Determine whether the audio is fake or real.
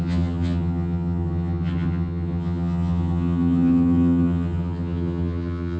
fake